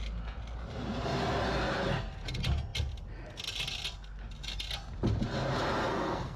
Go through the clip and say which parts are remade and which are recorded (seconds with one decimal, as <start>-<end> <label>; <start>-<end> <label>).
0.0-5.9 recorded; 5.9-6.4 remade

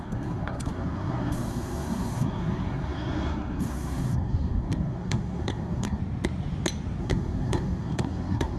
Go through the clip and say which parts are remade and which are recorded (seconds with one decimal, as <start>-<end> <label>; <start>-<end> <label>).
0.0-6.0 remade; 6.0-7.0 recorded; 7.0-8.6 remade

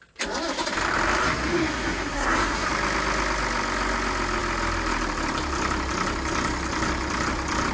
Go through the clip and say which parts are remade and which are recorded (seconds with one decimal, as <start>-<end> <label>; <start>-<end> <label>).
0.0-1.2 recorded; 1.2-2.7 remade; 2.7-7.7 recorded

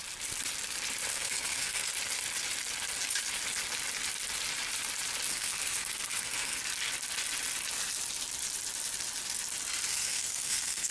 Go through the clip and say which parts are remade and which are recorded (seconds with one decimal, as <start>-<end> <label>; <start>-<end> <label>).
0.0-1.1 recorded; 1.1-1.9 remade; 1.9-5.3 recorded; 5.3-6.6 remade; 6.6-9.9 recorded; 9.9-10.9 remade

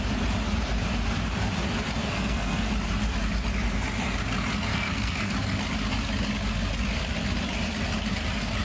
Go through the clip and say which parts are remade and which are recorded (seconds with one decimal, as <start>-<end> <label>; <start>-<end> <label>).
0.0-2.0 recorded; 2.0-2.7 remade; 2.7-4.7 recorded; 4.7-5.3 remade; 5.3-8.6 recorded